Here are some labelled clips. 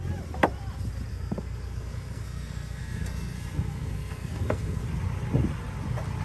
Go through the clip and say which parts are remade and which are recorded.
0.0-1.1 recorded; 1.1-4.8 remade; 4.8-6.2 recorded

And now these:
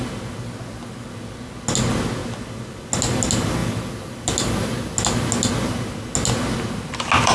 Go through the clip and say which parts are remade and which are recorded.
0.0-7.3 recorded

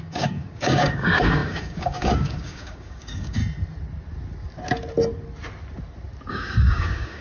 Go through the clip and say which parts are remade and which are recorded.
0.0-3.4 remade; 3.4-6.3 recorded; 6.3-7.2 remade

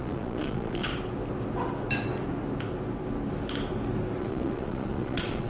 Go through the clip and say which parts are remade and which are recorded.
0.0-0.9 remade; 0.9-4.2 recorded; 4.2-5.5 remade